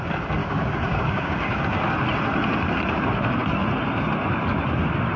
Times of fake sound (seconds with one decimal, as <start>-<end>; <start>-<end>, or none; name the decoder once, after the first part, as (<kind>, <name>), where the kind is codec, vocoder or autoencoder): 0.4-1.6 (codec, DAC)